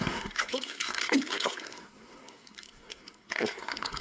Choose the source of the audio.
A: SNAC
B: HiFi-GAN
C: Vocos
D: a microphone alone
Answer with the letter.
A